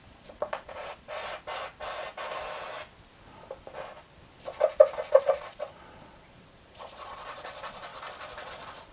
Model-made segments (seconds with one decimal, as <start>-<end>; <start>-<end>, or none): 0.0-1.2; 5.2-7.9; 8.5-8.9